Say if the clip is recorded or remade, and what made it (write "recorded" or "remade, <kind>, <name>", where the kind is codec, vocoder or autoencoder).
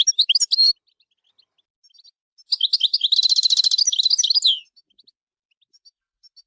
recorded